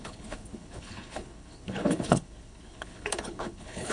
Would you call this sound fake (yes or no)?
yes